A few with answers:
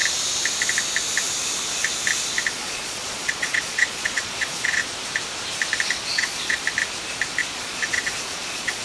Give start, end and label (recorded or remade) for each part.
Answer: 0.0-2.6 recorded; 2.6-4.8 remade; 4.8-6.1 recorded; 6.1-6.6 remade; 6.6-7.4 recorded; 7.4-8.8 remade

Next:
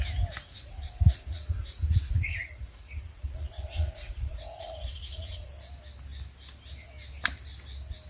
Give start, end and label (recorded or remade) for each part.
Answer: 0.0-0.7 recorded; 0.7-5.5 remade; 5.5-8.1 recorded

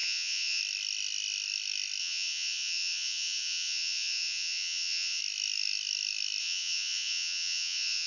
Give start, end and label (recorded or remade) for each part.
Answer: 0.0-0.6 remade; 0.6-2.0 recorded; 2.0-5.2 remade; 5.2-6.4 recorded; 6.4-8.1 remade